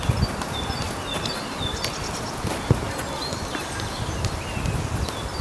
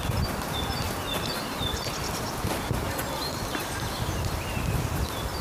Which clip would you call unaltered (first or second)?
first